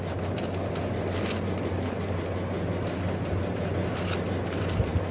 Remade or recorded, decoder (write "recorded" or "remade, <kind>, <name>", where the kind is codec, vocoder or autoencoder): recorded